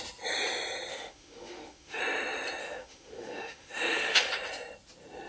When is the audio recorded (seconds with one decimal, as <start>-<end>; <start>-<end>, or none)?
0.0-0.9; 2.0-2.6; 4.3-5.3